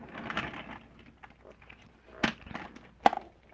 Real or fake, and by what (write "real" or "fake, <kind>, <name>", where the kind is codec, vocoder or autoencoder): real